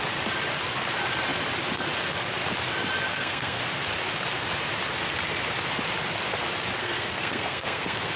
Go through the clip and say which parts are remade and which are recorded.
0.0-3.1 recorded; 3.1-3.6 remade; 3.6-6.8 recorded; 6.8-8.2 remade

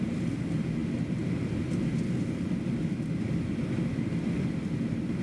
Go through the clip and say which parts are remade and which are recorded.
0.0-5.2 recorded

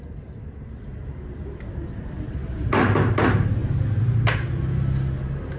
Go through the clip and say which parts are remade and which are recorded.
0.0-5.6 recorded

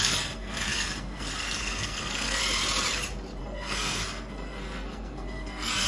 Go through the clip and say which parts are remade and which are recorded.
0.0-2.4 remade; 2.4-3.4 recorded; 3.4-5.9 remade